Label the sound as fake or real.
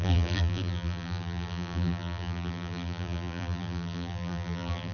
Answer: fake